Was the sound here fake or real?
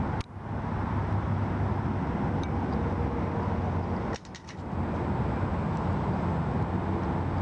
real